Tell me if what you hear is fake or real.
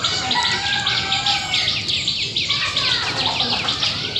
real